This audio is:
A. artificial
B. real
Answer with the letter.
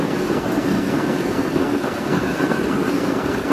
A